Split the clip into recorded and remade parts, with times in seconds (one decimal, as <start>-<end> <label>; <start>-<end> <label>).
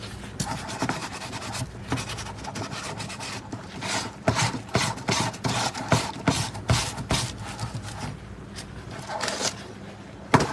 0.0-1.0 recorded; 1.0-1.8 remade; 1.8-2.5 recorded; 2.5-6.4 remade; 6.4-10.5 recorded